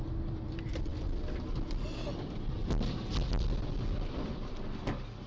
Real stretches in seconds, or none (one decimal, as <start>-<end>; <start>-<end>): 0.0-5.3